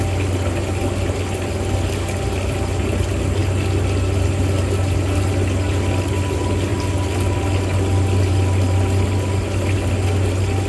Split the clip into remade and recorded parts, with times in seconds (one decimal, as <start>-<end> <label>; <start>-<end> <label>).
0.0-10.7 recorded